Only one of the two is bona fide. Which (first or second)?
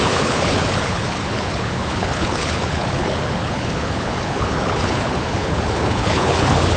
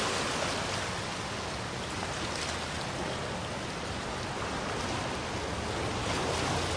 second